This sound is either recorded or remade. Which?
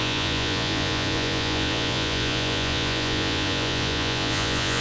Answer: remade